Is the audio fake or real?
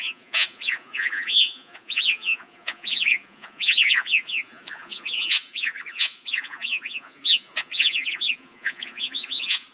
fake